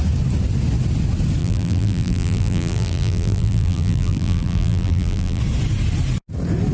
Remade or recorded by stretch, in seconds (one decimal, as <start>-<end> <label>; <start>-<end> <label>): 0.0-1.4 recorded; 1.4-5.4 remade; 5.4-6.7 recorded